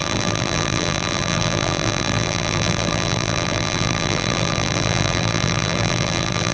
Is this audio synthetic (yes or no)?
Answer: yes